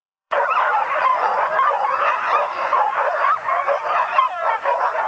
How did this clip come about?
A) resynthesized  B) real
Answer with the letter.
A